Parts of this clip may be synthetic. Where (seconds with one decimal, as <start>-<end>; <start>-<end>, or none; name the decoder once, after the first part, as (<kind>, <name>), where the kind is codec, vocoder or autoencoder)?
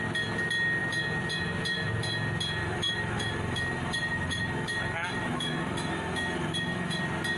2.6-7.0 (autoencoder, DAC-VAE)